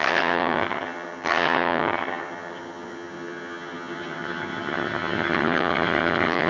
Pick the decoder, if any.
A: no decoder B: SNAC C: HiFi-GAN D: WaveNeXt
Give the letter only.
C